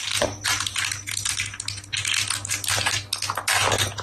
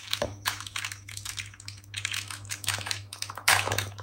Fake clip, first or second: second